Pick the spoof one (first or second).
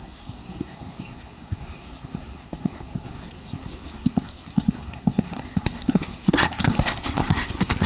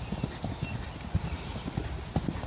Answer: first